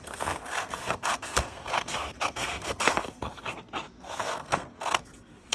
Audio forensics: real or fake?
fake